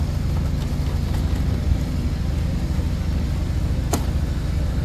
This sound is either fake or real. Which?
real